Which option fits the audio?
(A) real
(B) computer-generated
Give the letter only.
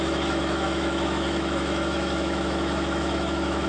B